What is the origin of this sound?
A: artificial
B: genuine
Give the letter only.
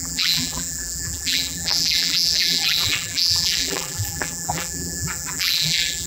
A